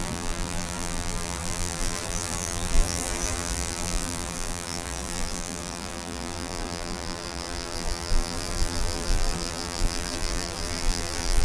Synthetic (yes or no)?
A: yes